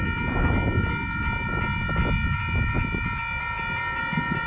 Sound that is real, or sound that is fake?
real